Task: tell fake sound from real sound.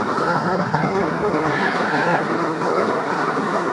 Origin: fake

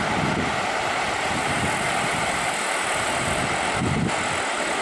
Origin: real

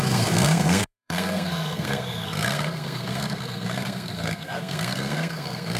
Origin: fake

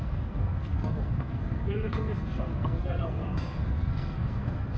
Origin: fake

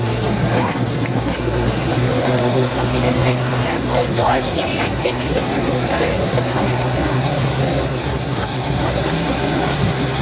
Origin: fake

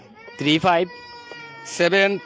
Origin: real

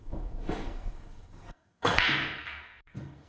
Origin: fake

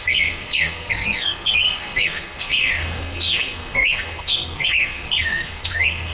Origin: fake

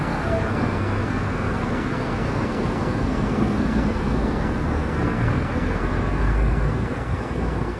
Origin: fake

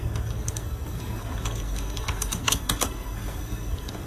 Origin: fake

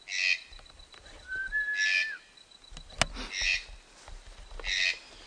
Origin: real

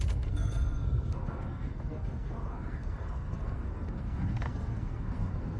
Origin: fake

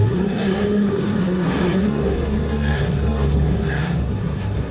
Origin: fake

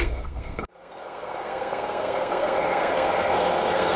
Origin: fake